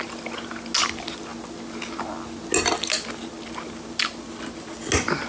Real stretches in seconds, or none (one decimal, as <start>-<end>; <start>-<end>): 0.0-5.3